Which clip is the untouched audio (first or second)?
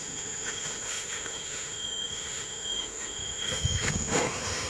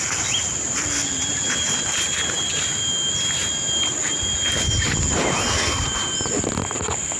second